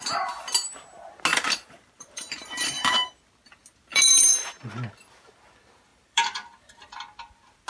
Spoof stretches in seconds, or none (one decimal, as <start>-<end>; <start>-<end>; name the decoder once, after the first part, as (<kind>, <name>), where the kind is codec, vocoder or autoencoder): 1.3-3.1 (vocoder, BigVGAN v2); 3.9-4.5; 5.9-6.5